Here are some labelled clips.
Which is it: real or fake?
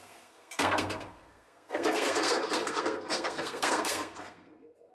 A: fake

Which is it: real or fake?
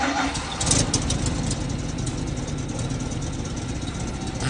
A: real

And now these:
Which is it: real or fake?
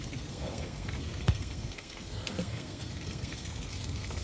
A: fake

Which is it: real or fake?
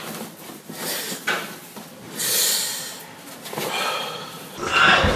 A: real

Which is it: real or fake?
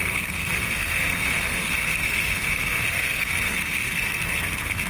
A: fake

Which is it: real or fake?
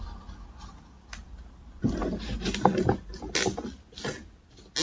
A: real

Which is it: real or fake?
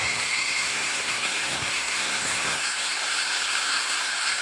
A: fake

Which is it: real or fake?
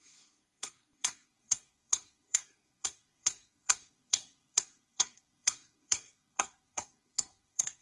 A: fake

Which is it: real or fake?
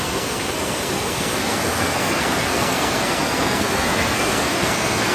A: fake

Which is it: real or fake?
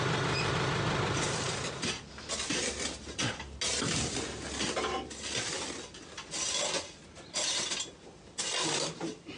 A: real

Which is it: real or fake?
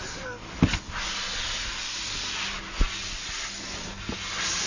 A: real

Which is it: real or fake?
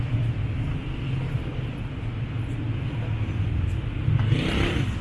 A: real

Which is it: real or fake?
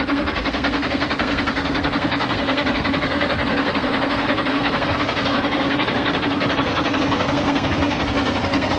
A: fake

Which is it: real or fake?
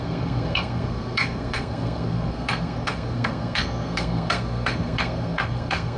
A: fake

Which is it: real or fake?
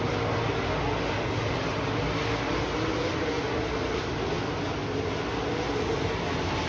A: real